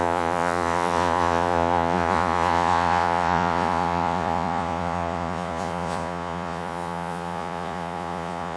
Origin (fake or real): fake